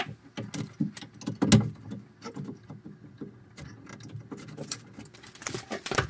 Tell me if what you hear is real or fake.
real